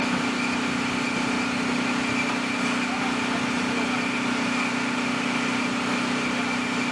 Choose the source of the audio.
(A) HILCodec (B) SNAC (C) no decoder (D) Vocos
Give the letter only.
C